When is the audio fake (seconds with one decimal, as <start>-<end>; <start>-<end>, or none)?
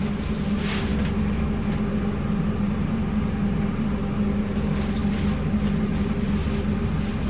none